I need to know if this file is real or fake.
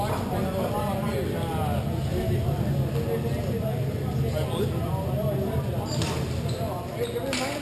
real